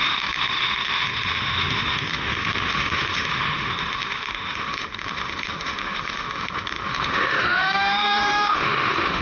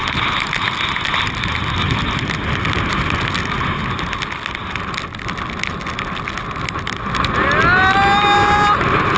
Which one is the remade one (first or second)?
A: first